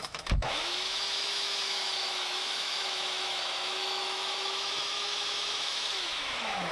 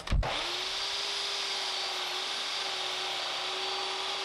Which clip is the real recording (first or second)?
second